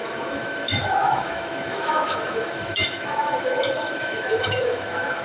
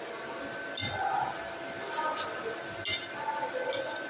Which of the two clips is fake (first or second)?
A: first